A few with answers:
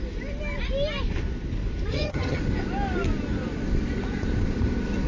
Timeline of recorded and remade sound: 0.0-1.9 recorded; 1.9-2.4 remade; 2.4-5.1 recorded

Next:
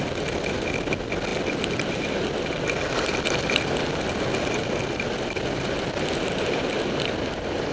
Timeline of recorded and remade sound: 0.0-7.7 recorded

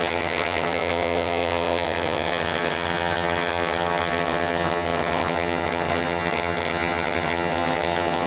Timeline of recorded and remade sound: 0.0-8.3 remade

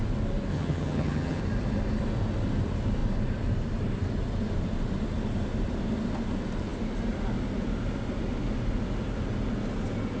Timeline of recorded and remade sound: 0.0-0.5 recorded; 0.5-1.4 remade; 1.4-10.2 recorded

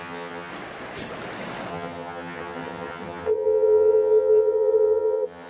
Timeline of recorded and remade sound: 0.0-0.5 remade; 0.5-1.7 recorded; 1.7-5.5 remade

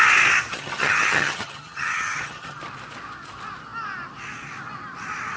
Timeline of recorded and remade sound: 0.0-0.5 recorded; 0.5-2.6 remade; 2.6-5.4 recorded

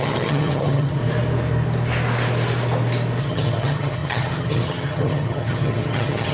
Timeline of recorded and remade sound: 0.0-1.0 remade; 1.0-3.2 recorded; 3.2-6.3 remade